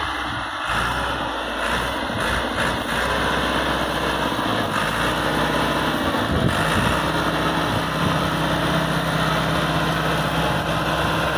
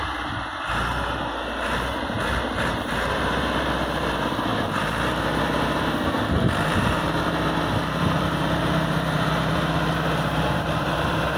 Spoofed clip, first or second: second